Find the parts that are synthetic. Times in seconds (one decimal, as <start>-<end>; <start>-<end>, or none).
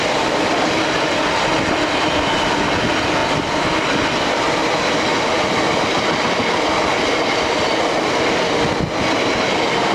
none